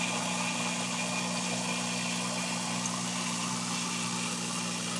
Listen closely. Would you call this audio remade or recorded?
recorded